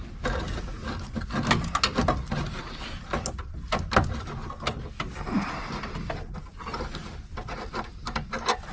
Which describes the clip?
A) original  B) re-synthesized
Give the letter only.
A